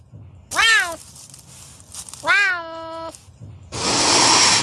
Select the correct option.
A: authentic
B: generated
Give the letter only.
A